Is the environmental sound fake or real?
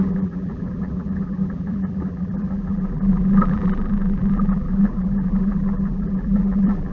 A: fake